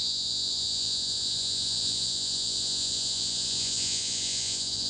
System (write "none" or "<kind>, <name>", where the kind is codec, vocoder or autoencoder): vocoder, Vocos